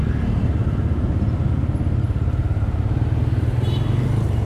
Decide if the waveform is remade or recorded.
recorded